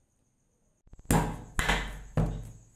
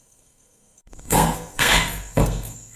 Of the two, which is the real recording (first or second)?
first